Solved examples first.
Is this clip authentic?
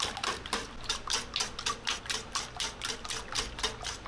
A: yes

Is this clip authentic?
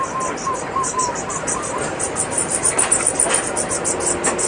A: yes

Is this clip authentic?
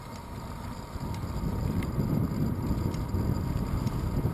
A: yes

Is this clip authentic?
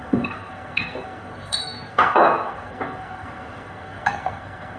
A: no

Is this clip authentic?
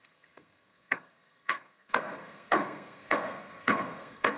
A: no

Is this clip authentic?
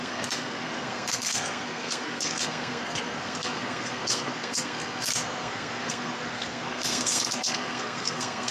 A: no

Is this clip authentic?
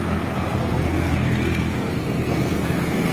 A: no